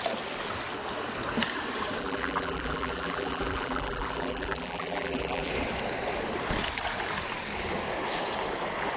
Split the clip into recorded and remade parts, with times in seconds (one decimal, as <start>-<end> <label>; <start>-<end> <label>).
0.0-2.0 recorded; 2.0-5.5 remade; 5.5-9.0 recorded